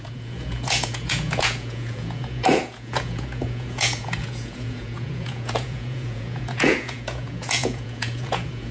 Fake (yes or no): yes